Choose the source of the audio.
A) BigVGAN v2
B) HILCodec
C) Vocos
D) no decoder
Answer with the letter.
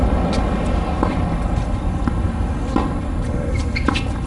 D